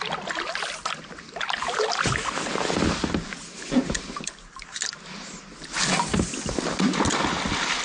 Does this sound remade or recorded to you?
recorded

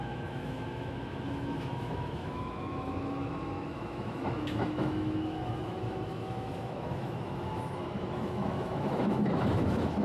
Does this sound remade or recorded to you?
remade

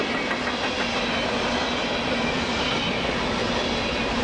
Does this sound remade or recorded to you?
recorded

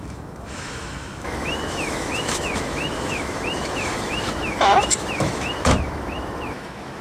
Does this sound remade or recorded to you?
remade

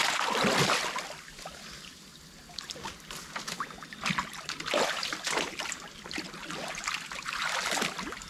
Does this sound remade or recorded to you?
recorded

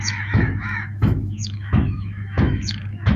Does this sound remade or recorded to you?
remade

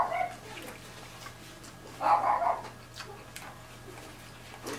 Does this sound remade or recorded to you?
recorded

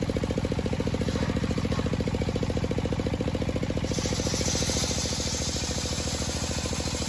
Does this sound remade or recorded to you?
recorded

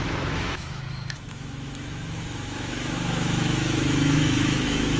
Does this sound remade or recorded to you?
remade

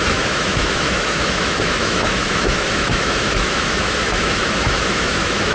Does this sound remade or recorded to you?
remade